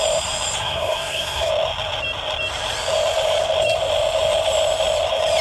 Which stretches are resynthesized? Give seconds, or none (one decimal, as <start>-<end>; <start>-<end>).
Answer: 0.6-1.5